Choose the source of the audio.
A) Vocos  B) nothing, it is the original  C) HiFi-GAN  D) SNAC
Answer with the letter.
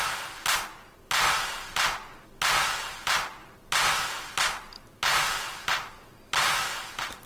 B